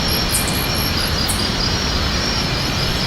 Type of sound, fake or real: real